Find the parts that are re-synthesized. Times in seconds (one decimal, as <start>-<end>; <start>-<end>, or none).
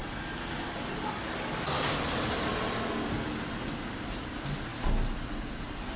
none